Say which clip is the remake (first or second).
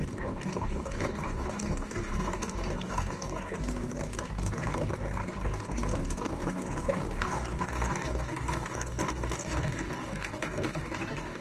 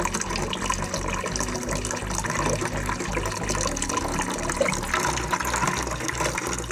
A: first